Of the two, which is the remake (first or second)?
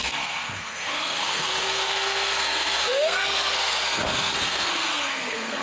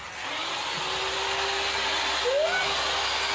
first